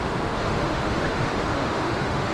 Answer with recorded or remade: remade